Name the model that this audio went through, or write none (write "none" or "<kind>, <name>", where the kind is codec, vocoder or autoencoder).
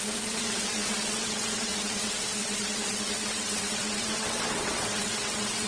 vocoder, WaveNeXt